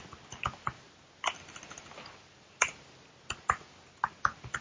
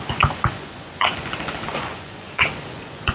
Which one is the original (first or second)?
first